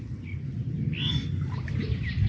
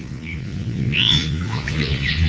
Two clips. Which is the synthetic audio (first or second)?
second